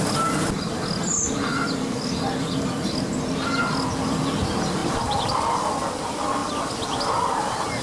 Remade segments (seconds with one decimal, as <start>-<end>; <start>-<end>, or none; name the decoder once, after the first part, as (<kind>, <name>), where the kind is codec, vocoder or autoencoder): 1.5-2.1 (vocoder, BigVGAN v2)